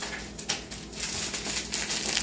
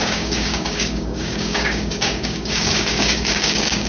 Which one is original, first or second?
first